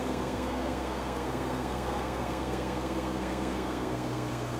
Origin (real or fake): fake